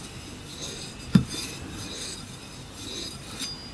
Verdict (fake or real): real